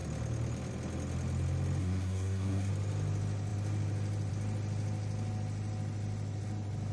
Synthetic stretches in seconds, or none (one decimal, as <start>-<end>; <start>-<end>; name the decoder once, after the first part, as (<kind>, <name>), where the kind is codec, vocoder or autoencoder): 1.8-2.7 (codec, SNAC)